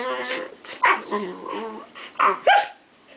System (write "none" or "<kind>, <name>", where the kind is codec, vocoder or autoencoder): none